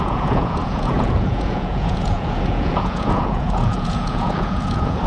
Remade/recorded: remade